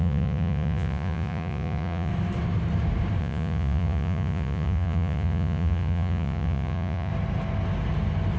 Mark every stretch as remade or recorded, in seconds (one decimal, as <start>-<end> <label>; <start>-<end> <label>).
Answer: 0.0-2.1 remade; 2.1-3.2 recorded; 3.2-7.1 remade; 7.1-8.4 recorded